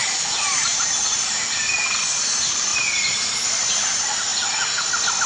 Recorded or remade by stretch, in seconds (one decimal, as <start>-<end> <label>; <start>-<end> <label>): 0.0-2.7 remade; 2.7-3.7 recorded; 3.7-4.3 remade; 4.3-5.3 recorded